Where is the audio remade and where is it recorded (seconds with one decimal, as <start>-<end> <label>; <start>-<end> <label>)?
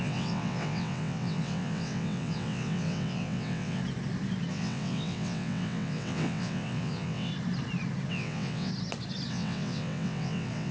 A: 0.0-3.8 remade; 3.8-4.5 recorded; 4.5-7.3 remade; 7.3-8.1 recorded; 8.1-8.7 remade; 8.7-9.3 recorded; 9.3-10.7 remade